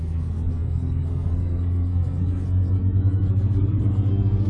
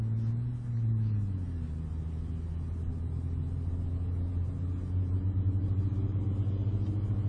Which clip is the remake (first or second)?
first